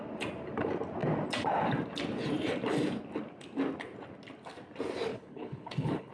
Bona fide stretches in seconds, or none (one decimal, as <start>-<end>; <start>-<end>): 0.0-5.1